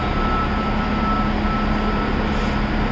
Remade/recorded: recorded